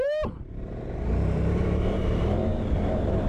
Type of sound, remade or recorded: remade